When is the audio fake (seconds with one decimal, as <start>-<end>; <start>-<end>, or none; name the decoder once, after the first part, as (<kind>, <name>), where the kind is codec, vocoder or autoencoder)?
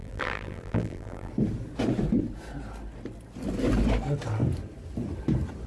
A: 0.0-1.3 (vocoder, BigVGAN v2)